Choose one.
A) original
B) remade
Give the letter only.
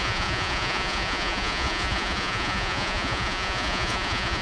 B